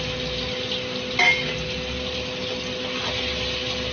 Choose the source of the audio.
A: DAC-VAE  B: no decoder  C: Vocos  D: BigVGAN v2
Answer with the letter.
B